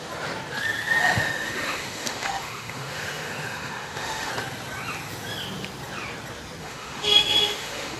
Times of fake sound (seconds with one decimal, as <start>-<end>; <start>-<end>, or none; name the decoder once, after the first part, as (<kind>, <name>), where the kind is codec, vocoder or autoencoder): 1.0-4.3 (autoencoder, DAC-VAE); 6.6-8.0

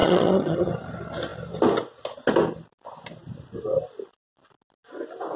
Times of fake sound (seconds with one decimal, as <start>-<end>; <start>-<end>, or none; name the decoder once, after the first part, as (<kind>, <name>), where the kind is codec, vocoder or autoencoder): 0.0-0.7 (vocoder, HiFi-GAN)

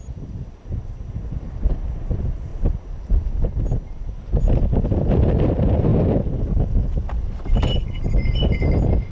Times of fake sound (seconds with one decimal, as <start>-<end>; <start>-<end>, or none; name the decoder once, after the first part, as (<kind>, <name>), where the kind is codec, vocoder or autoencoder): 0.0-2.5 (vocoder, BigVGAN v2); 3.9-5.9; 6.8-9.1

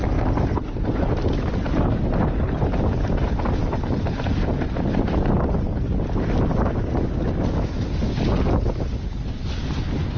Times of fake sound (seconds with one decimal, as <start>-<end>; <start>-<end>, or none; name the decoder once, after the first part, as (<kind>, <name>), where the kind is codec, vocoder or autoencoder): none